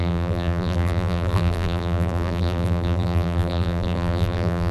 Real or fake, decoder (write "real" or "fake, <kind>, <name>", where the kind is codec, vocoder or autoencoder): fake, vocoder, BigVGAN v2